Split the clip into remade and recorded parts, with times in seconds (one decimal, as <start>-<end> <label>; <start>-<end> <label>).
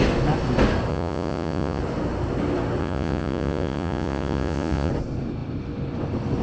0.0-0.9 recorded; 0.9-1.8 remade; 1.8-2.8 recorded; 2.8-4.9 remade; 4.9-6.4 recorded